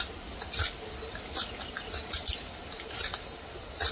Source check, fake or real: real